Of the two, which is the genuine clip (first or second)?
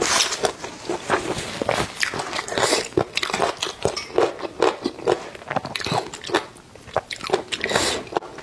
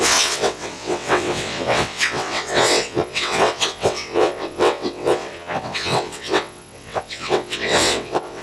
first